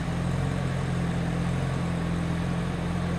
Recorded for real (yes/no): yes